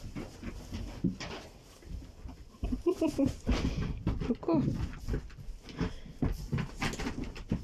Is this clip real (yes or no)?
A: yes